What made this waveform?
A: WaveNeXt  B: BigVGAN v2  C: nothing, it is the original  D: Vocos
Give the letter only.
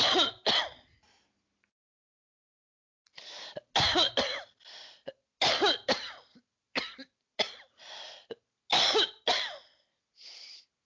C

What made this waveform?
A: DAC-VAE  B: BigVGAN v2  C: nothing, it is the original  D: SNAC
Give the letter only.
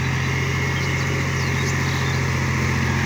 C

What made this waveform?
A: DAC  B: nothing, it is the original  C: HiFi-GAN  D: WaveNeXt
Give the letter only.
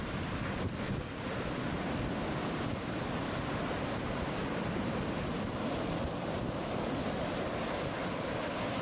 B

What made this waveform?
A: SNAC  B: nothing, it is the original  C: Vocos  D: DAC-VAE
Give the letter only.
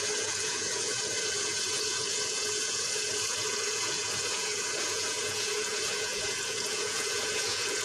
C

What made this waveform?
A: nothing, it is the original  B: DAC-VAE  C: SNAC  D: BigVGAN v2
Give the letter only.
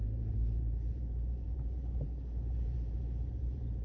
D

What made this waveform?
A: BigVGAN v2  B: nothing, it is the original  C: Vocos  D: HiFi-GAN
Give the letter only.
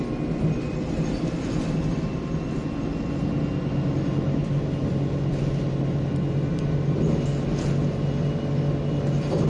B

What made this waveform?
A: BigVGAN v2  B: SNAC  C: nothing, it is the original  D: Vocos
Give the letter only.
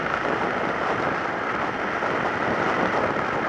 C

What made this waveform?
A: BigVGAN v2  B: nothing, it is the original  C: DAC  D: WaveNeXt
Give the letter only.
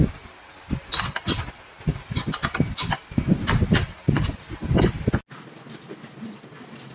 B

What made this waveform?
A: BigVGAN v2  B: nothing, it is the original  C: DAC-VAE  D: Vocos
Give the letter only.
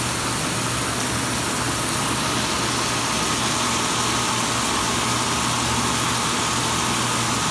B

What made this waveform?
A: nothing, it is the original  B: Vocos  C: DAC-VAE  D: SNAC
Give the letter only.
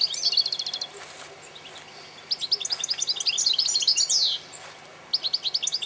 A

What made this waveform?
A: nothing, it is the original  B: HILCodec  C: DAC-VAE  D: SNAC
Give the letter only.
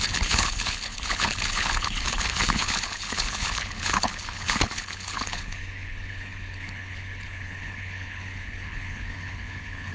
B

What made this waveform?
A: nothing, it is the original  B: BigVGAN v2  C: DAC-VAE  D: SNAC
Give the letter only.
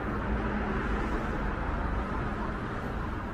A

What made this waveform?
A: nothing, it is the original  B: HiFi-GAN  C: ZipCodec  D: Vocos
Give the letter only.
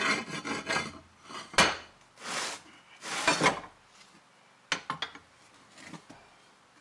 A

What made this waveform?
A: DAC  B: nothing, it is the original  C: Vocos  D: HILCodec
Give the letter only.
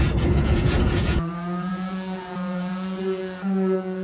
C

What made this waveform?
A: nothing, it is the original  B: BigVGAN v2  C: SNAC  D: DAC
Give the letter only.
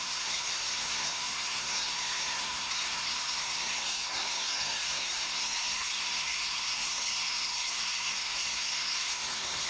C